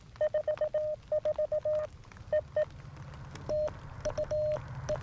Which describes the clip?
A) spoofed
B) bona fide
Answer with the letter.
B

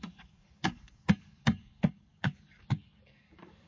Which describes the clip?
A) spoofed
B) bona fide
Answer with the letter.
A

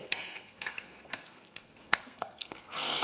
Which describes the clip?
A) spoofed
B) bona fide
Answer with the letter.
A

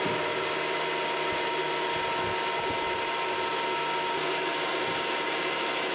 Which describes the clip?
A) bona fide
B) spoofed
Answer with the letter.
A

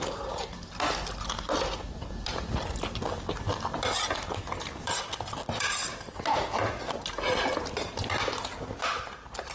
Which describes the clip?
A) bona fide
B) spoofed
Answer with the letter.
A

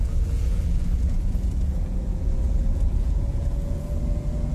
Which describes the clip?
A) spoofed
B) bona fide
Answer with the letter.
A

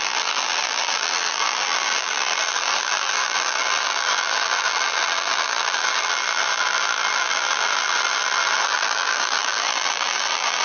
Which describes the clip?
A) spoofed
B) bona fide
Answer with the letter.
A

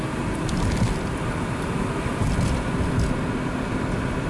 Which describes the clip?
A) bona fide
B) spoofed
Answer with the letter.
A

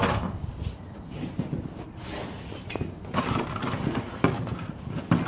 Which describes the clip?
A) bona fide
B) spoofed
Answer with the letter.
A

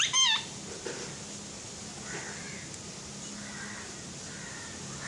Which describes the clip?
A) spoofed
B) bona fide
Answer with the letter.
B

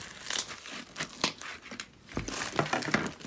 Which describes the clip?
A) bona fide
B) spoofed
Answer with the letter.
A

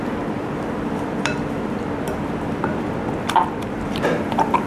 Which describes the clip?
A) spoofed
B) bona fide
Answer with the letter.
A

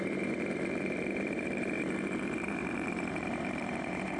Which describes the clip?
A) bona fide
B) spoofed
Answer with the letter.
B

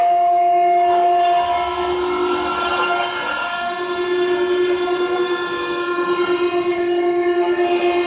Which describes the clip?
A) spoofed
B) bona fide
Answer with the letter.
B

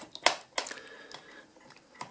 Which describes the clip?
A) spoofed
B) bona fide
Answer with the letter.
B